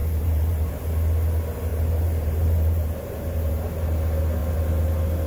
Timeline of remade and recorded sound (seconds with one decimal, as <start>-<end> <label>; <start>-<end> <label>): 0.0-0.7 remade; 0.7-1.7 recorded; 1.7-3.5 remade; 3.5-5.3 recorded